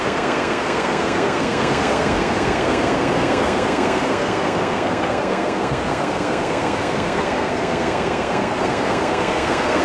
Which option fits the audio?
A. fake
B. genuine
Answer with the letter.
A